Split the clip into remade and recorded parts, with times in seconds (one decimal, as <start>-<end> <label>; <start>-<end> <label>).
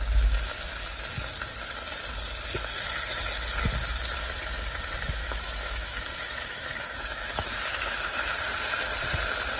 0.0-5.2 recorded; 5.2-8.3 remade; 8.3-9.6 recorded